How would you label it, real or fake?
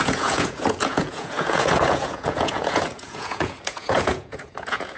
fake